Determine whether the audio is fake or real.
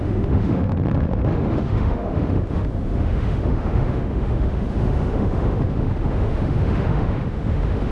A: fake